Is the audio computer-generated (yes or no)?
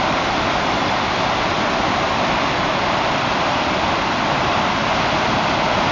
no